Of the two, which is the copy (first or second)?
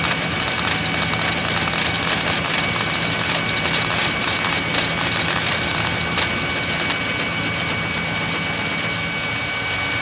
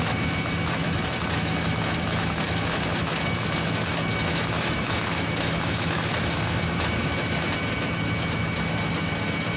second